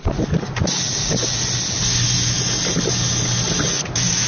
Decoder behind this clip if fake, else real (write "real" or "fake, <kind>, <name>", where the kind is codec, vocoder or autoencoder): real